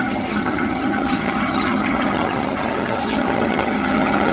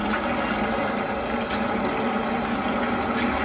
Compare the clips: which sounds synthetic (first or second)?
first